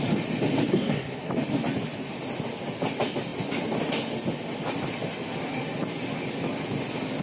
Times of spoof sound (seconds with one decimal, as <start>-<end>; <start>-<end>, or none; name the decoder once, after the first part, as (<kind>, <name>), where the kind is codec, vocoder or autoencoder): 0.7-1.3 (codec, SNAC)